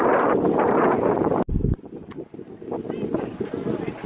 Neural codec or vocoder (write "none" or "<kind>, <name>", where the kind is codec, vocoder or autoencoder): none